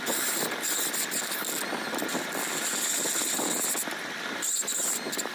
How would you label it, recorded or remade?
recorded